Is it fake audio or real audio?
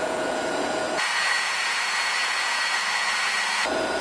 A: fake